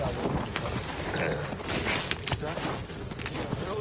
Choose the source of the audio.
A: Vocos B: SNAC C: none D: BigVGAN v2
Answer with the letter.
C